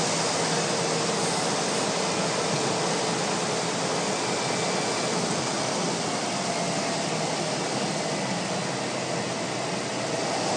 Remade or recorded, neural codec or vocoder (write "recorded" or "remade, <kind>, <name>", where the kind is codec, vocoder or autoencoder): recorded